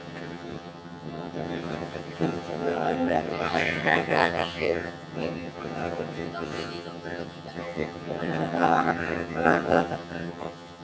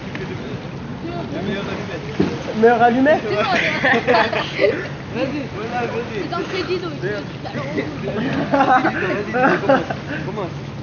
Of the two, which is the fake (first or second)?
first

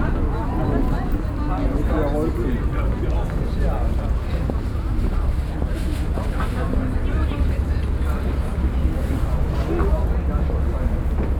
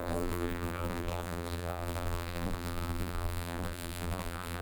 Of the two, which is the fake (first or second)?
second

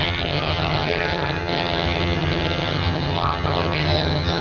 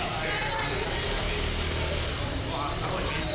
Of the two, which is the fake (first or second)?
first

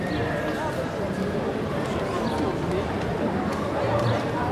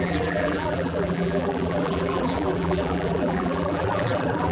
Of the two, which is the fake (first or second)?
second